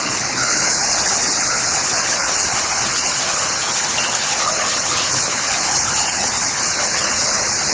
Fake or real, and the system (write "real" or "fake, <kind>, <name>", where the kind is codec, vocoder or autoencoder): fake, codec, HILCodec